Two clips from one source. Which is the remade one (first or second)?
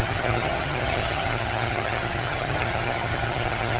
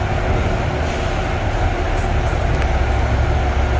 first